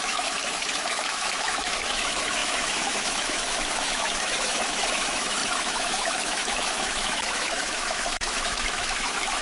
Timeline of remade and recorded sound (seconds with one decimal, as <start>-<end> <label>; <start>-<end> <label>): 0.0-9.4 remade